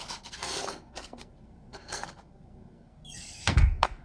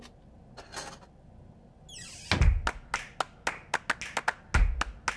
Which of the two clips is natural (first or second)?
second